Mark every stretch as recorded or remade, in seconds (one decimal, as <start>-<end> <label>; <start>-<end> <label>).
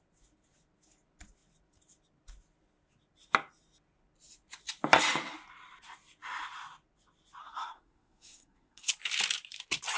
0.0-7.4 recorded; 7.4-8.9 remade; 8.9-10.0 recorded